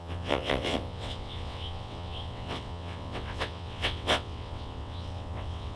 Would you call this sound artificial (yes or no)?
yes